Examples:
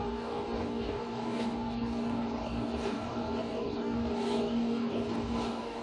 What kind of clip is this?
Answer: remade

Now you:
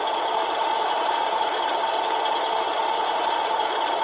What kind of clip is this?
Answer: remade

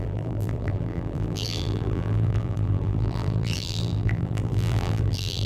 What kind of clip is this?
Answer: remade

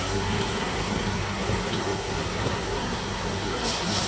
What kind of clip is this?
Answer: remade